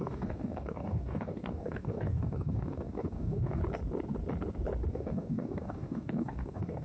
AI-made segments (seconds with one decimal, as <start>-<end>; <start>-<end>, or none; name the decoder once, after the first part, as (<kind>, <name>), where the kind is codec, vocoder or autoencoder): 0.0-3.6 (codec, DAC); 4.9-6.8